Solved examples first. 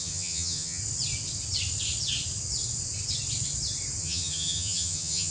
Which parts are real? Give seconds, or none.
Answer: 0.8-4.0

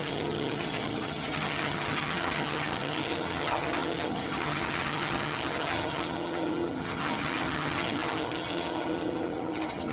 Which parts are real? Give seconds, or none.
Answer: none

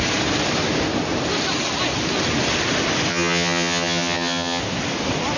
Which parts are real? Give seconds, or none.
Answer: 0.0-3.1; 4.6-5.4

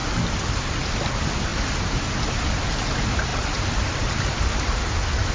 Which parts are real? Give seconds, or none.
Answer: 0.0-5.3